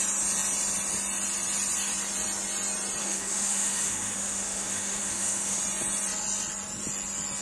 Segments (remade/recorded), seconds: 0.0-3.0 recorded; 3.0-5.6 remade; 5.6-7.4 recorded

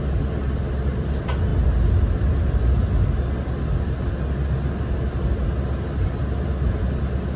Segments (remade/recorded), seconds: 0.0-7.4 recorded